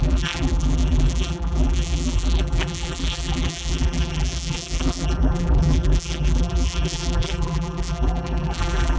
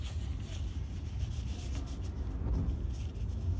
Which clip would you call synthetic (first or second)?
first